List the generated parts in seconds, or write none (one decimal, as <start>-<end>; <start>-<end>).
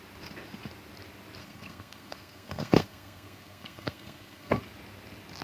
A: 1.4-4.6